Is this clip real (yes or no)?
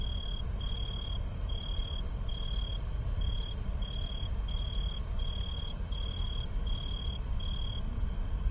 yes